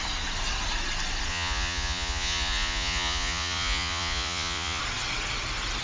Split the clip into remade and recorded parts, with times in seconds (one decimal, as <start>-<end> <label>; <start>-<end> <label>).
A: 0.0-1.3 recorded; 1.3-4.8 remade; 4.8-5.8 recorded